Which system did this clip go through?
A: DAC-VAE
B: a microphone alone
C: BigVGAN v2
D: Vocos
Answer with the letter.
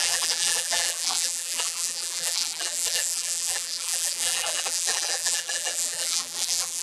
C